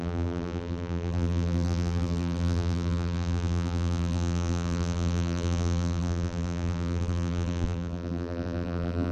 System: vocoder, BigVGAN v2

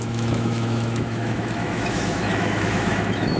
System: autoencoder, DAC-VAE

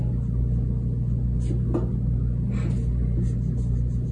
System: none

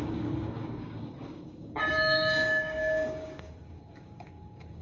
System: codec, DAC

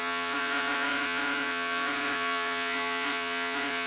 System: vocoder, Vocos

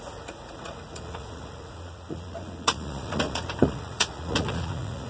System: vocoder, Vocos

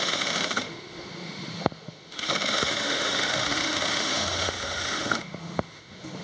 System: autoencoder, DAC-VAE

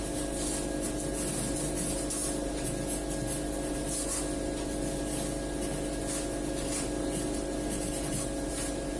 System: none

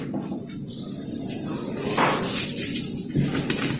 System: none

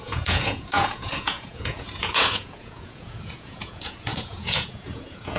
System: vocoder, Vocos